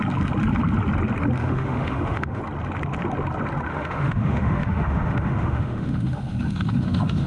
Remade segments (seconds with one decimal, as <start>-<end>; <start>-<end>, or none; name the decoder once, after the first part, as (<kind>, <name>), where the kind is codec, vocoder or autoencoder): 1.4-2.4 (autoencoder, DAC-VAE); 3.7-7.3